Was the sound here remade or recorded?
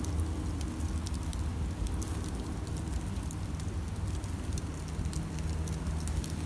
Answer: recorded